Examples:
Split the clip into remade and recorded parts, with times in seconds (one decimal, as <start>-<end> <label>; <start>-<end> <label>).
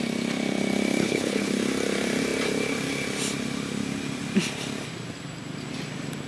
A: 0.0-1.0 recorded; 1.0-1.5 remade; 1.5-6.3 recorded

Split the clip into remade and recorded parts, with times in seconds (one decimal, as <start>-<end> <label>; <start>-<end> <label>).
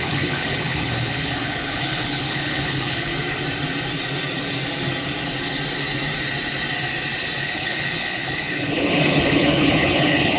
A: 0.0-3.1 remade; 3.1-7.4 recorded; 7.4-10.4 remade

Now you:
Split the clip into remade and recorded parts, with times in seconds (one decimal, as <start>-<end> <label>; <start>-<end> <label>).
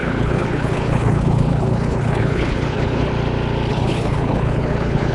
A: 0.0-3.1 remade; 3.1-3.7 recorded; 3.7-5.1 remade